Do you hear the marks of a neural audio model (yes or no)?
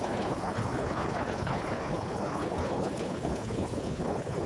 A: yes